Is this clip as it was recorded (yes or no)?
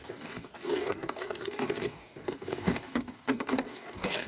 no